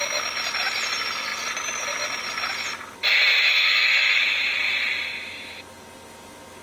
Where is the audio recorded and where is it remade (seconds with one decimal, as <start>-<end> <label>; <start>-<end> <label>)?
0.0-3.5 recorded; 3.5-4.2 remade; 4.2-6.6 recorded